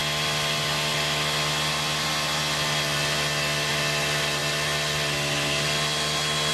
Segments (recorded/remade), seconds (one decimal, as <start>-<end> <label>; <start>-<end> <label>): 0.0-6.5 recorded